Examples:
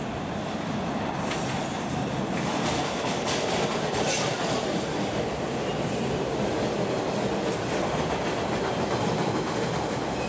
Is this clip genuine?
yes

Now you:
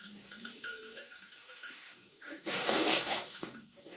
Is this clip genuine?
no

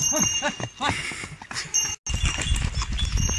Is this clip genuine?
yes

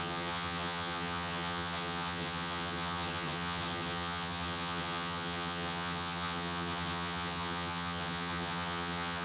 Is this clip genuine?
no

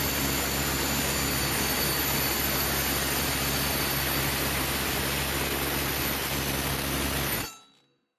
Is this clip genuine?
yes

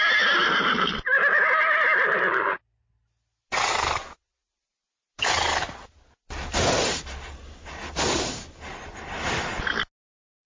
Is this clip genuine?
yes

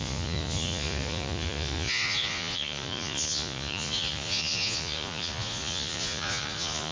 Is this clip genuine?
no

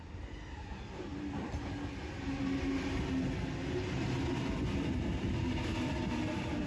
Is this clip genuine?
yes